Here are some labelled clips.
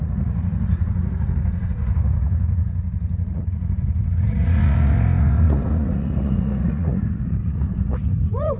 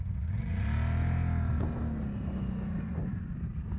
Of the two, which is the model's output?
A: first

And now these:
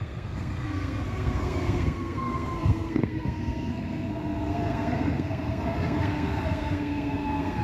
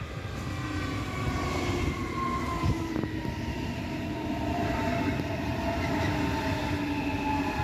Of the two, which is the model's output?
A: first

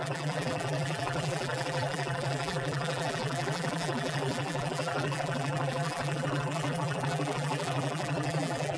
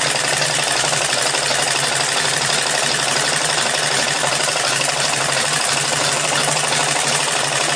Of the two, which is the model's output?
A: first